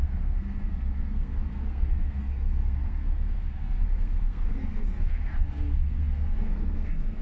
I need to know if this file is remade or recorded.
remade